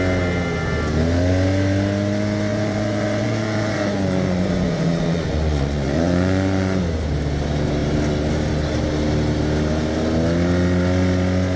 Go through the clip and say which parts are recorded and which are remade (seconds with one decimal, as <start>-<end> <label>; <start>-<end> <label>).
0.0-2.5 recorded; 2.5-6.8 remade; 6.8-11.6 recorded